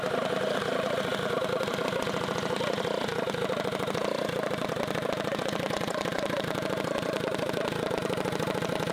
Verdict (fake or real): real